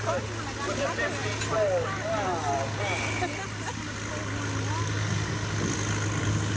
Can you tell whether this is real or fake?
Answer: real